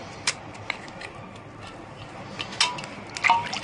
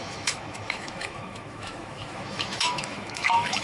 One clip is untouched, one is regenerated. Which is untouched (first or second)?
first